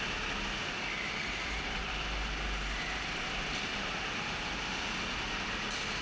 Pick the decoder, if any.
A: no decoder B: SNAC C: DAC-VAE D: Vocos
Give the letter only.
A